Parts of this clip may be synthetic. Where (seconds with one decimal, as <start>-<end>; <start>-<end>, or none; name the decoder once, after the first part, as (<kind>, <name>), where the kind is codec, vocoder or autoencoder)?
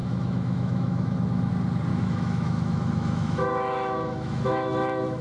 0.0-1.5 (autoencoder, DAC-VAE); 1.9-5.2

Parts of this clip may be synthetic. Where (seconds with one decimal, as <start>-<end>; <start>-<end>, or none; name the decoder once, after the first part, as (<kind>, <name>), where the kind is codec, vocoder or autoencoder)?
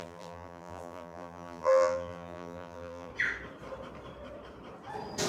0.0-3.1 (vocoder, BigVGAN v2)